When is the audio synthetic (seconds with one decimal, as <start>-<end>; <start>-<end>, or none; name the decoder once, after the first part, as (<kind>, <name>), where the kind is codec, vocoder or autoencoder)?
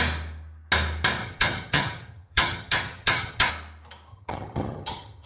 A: 1.2-3.5 (vocoder, HiFi-GAN); 4.1-5.3